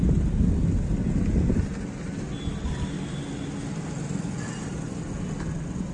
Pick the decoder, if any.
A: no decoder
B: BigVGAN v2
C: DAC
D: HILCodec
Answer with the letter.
A